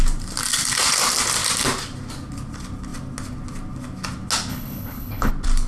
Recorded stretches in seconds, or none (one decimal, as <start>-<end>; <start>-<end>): 0.0-4.5; 5.3-5.7